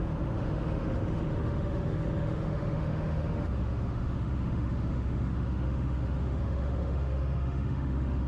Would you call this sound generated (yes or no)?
yes